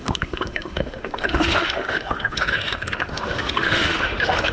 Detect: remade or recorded remade